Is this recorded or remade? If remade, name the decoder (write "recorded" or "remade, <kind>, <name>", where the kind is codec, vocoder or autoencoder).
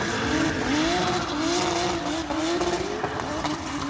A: recorded